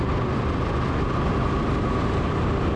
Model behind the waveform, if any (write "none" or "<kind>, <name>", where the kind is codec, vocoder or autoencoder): vocoder, BigVGAN v2